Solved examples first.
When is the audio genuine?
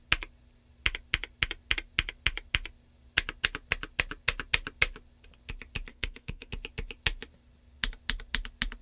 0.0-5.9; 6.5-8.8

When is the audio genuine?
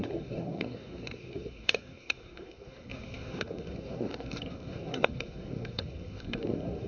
none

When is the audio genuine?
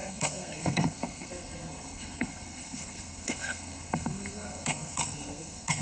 none